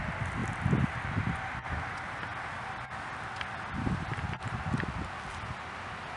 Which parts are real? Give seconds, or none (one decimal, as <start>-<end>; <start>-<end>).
0.0-6.2